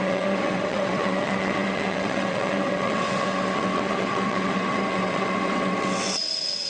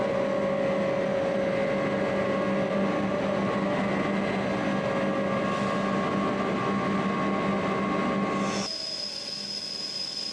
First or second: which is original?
second